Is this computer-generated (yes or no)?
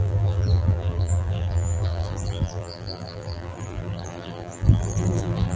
yes